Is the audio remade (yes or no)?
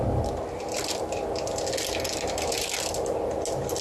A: no